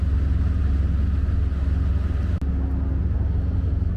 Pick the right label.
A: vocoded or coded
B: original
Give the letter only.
B